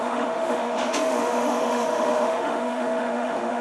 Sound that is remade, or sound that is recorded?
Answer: remade